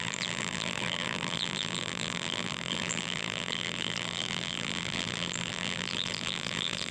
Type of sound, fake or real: fake